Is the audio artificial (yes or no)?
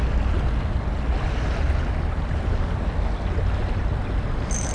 no